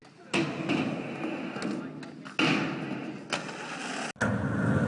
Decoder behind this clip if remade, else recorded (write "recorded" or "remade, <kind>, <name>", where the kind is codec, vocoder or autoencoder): recorded